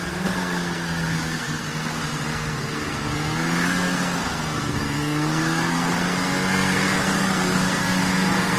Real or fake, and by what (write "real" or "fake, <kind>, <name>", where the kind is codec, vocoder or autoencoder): fake, codec, SNAC